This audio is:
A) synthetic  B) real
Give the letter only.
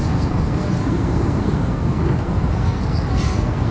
A